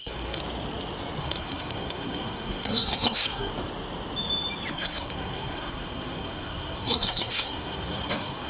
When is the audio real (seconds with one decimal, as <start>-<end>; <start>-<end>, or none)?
0.4-1.2; 3.5-4.7